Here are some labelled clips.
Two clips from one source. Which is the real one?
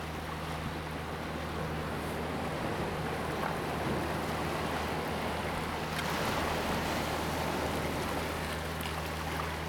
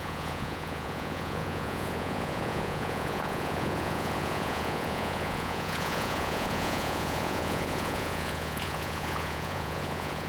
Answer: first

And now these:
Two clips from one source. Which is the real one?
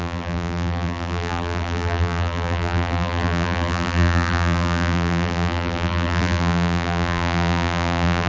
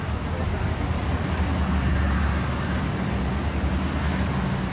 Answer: second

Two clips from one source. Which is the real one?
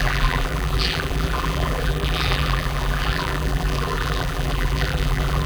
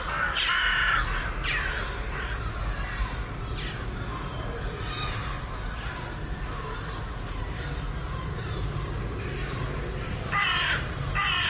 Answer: second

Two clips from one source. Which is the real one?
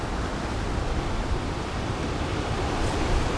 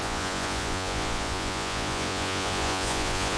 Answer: first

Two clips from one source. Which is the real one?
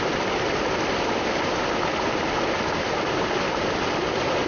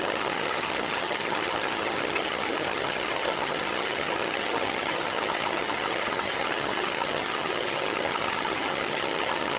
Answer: first